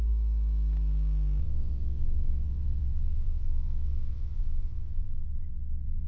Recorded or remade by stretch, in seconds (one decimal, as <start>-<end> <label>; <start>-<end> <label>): 0.0-1.4 recorded; 1.4-6.1 remade